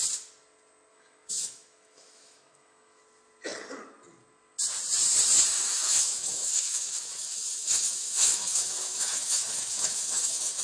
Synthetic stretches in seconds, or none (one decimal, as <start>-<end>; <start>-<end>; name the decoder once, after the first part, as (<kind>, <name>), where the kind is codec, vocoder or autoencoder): 0.9-3.0 (autoencoder, DAC-VAE); 5.5-10.6